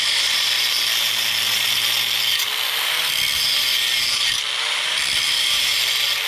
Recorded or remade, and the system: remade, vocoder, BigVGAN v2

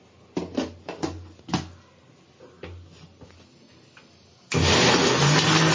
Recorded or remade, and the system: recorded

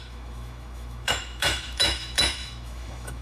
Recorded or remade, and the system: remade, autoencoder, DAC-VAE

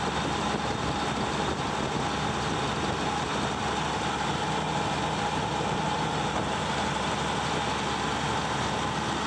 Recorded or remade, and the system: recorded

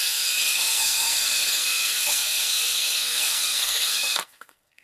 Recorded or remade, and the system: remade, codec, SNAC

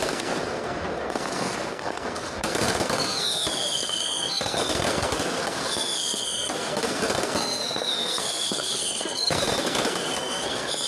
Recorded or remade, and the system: remade, codec, SNAC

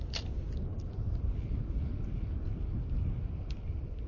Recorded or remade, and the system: recorded